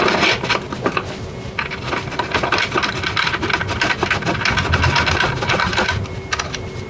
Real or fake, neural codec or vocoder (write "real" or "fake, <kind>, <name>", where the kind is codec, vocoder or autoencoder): real